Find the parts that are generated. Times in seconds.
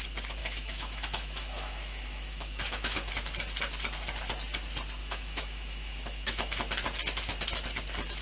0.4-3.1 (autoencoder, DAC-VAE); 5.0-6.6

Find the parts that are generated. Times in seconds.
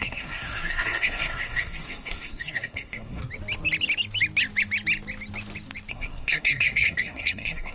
0.0-3.2 (codec, SNAC); 5.9-7.7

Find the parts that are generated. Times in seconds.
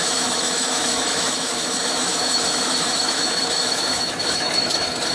0.0-5.1 (autoencoder, DAC-VAE)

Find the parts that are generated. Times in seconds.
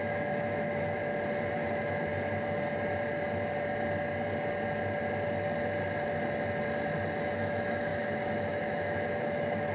0.0-1.0 (autoencoder, DAC-VAE); 1.5-2.1; 7.2-9.7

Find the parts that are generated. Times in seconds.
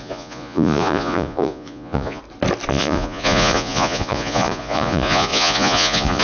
0.0-2.2 (vocoder, Vocos); 2.7-6.2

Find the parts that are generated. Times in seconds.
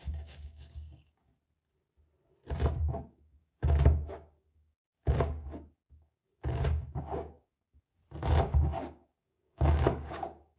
0.0-1.3 (codec, DAC); 2.8-7.9; 8.4-10.6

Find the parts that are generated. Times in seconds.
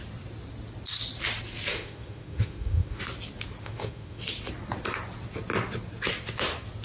1.7-3.0 (autoencoder, DAC-VAE); 3.6-4.2